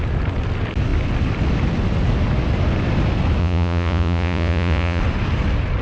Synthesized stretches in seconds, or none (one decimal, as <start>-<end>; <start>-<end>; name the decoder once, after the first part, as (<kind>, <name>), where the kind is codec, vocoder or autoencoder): 3.4-5.0 (vocoder, Vocos)